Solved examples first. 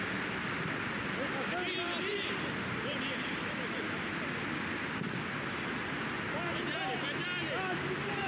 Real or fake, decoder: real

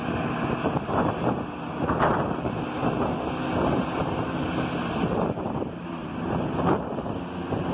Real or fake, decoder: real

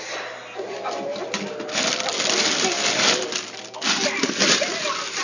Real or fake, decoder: real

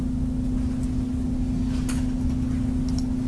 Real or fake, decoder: real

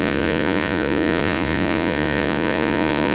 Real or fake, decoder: fake, vocoder, Vocos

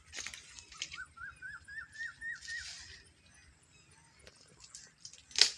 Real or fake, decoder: real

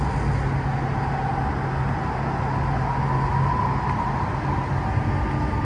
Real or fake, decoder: real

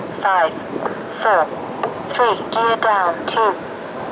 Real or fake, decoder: real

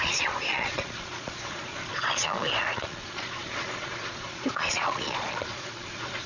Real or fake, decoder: fake, vocoder, Vocos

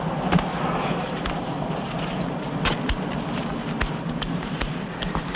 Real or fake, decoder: real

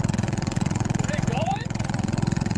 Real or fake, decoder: fake, vocoder, WaveNeXt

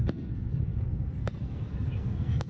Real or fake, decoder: fake, codec, SNAC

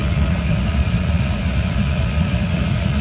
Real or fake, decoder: fake, vocoder, Vocos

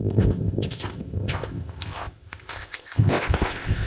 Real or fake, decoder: fake, codec, ZipCodec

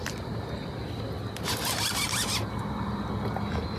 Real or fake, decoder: real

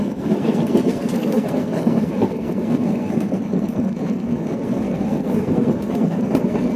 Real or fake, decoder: fake, codec, SNAC